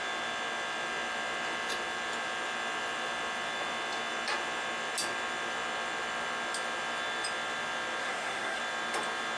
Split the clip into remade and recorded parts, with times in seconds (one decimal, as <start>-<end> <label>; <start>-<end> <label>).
0.0-8.0 recorded; 8.0-8.6 remade; 8.6-9.4 recorded